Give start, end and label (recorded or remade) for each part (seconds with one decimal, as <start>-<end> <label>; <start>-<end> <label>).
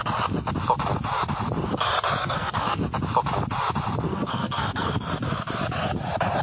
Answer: 0.0-2.2 recorded; 2.2-2.8 remade; 2.8-4.1 recorded; 4.1-5.1 remade; 5.1-6.4 recorded